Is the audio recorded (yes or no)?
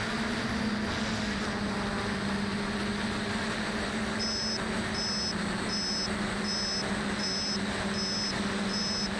yes